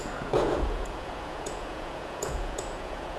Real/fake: fake